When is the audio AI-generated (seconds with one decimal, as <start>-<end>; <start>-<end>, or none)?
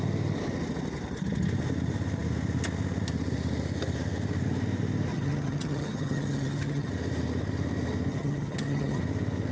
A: 5.1-6.9; 8.1-9.0